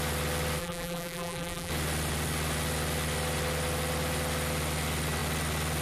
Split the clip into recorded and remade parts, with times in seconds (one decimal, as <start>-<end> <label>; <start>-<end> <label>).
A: 0.0-0.6 recorded; 0.6-1.7 remade; 1.7-5.8 recorded